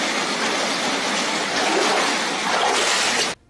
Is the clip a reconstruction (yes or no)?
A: no